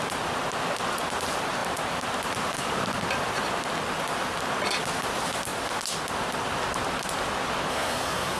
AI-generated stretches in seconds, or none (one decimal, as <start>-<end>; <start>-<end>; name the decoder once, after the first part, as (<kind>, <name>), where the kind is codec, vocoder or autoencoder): 7.7-8.4 (codec, SNAC)